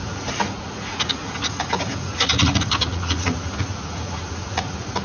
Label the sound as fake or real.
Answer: fake